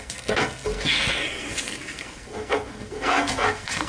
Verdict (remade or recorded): remade